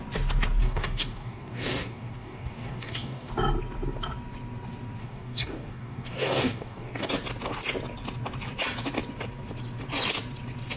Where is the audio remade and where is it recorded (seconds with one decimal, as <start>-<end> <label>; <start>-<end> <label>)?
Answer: 0.0-0.6 recorded; 0.6-3.3 remade; 3.3-5.0 recorded; 5.0-7.1 remade; 7.1-10.8 recorded